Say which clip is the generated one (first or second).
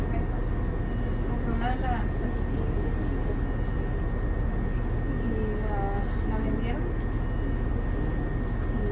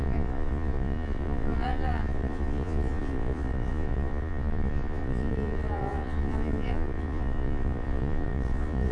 second